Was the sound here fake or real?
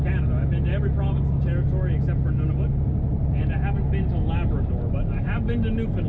real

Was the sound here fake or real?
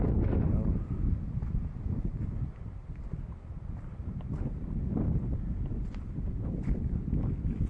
real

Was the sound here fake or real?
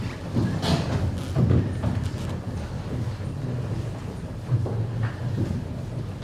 real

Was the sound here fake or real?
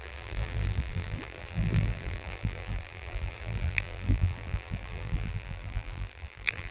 fake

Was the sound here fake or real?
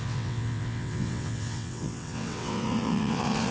fake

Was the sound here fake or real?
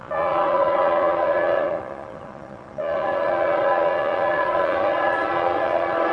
fake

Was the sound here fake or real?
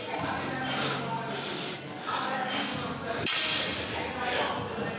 real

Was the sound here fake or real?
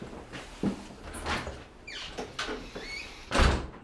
real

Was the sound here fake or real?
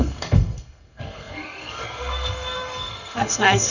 fake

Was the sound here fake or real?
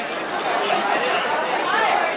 real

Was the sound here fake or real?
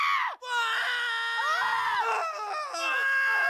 real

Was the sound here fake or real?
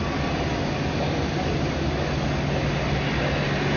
real